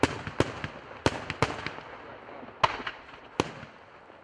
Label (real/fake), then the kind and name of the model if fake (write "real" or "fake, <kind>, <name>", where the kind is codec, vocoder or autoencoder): real